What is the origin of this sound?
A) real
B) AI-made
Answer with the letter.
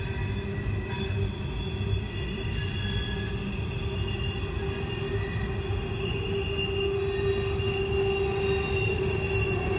A